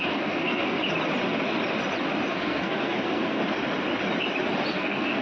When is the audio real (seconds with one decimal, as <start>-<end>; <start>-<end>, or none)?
0.8-2.3; 3.4-4.7